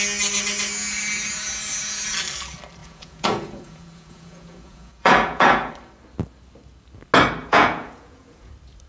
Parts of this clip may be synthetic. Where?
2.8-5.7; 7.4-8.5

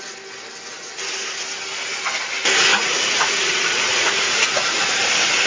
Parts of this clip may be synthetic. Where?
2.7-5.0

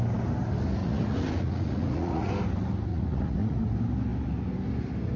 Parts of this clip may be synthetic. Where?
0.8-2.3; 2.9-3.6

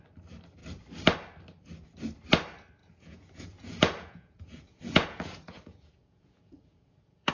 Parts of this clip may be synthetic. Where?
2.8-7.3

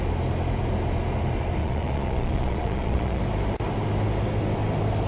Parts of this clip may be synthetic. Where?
1.6-3.2

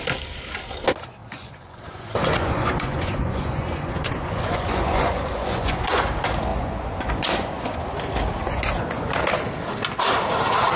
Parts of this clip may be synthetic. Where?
1.2-6.0; 6.5-7.8; 8.4-9.1